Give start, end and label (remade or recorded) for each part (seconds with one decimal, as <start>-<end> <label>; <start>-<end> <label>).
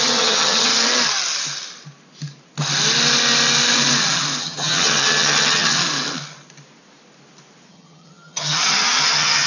0.0-0.7 remade; 0.7-4.4 recorded; 4.4-5.8 remade; 5.8-7.7 recorded; 7.7-9.5 remade